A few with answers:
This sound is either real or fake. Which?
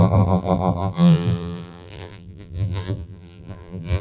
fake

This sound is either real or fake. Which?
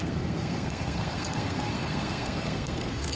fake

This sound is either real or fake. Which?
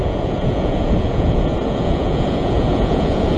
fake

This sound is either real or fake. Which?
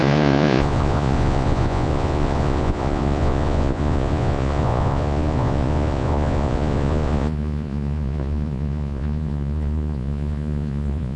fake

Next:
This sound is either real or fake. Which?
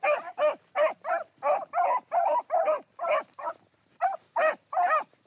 real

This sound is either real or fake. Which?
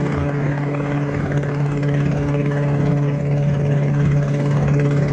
fake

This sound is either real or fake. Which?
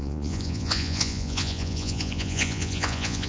fake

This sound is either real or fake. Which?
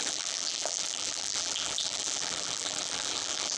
fake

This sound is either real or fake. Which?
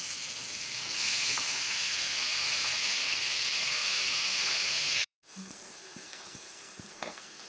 fake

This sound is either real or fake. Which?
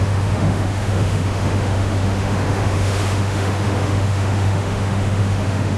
fake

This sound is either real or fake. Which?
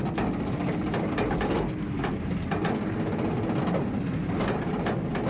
real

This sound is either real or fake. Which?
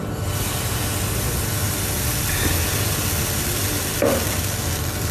real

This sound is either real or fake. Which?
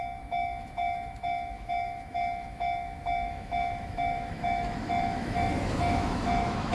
fake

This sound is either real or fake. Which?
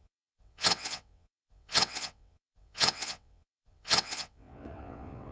fake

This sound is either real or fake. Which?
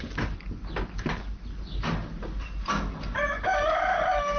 real